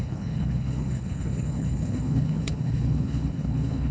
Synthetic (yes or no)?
yes